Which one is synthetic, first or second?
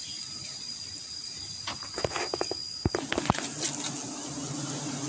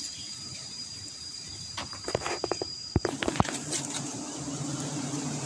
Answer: second